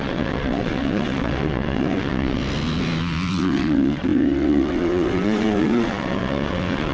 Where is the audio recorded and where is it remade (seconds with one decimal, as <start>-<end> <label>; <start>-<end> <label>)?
0.0-2.4 remade; 2.4-3.3 recorded; 3.3-6.9 remade